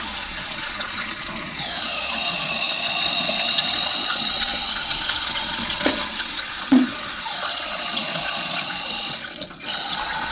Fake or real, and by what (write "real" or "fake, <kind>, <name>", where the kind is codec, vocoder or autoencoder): fake, vocoder, Vocos